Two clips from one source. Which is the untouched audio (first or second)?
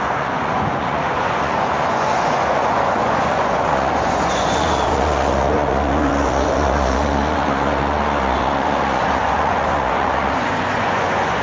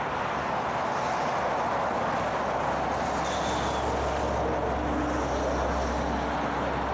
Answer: second